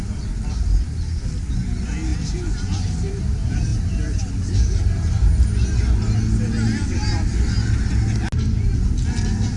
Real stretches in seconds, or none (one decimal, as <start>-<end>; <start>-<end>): 0.0-9.6

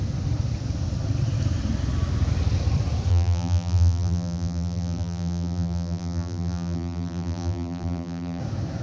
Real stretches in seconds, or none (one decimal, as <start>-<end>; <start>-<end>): 0.0-3.1; 8.4-8.8

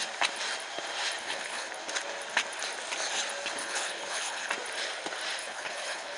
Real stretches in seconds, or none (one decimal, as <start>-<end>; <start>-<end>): 0.0-1.2; 1.7-3.6; 4.5-5.4

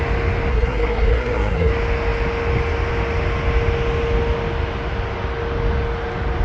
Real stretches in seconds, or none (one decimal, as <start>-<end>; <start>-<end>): 0.0-0.5; 1.7-6.4

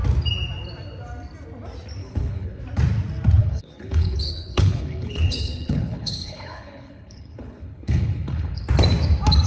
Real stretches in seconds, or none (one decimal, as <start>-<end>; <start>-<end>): 0.0-2.0; 2.6-3.4; 8.6-9.5

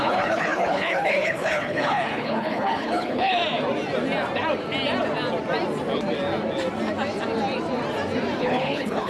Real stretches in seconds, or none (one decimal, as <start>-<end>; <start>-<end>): 3.4-8.4

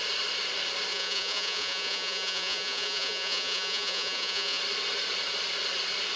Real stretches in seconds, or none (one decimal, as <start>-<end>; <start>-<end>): 0.0-0.9; 4.6-6.2